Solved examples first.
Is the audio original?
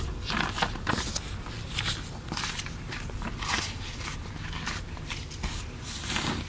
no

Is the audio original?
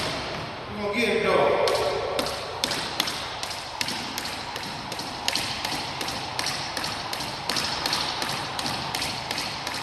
no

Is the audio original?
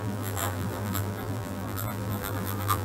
no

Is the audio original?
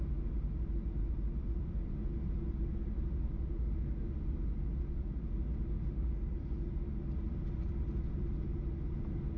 yes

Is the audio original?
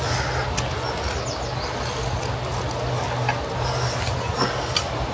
yes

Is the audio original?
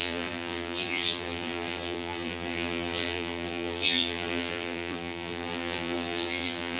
no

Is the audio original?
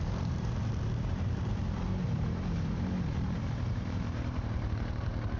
no